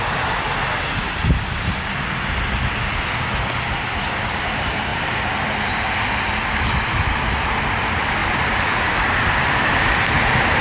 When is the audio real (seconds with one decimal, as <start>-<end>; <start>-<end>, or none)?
0.0-10.6